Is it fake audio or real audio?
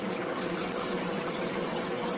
fake